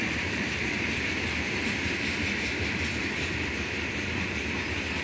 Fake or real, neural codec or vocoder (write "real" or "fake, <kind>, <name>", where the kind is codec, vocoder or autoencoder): fake, vocoder, BigVGAN v2